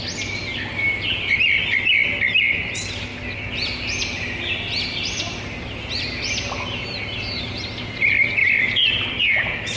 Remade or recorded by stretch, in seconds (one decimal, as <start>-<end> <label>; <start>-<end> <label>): 0.0-8.4 recorded; 8.4-9.2 remade; 9.2-9.8 recorded